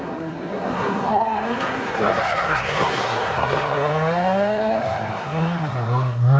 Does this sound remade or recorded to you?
remade